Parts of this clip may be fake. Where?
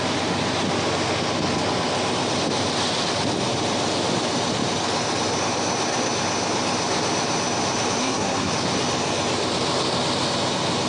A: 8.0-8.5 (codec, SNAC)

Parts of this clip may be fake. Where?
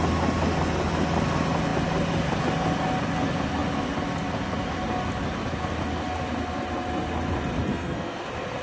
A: 7.7-8.2 (codec, SNAC)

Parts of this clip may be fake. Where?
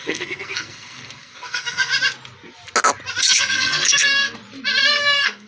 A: 0.0-1.9 (codec, SNAC); 3.2-4.4; 5.0-5.5